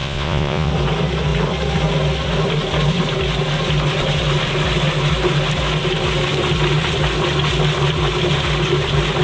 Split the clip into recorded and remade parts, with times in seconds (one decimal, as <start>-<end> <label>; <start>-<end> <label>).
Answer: 0.0-0.7 remade; 0.7-9.2 recorded